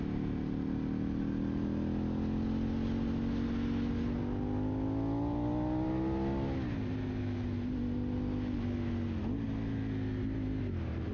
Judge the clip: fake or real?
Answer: real